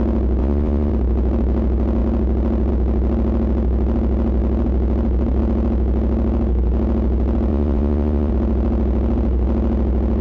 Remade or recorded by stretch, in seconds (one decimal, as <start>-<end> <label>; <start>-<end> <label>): 0.0-0.4 recorded; 0.4-0.9 remade; 0.9-7.5 recorded; 7.5-8.3 remade; 8.3-10.2 recorded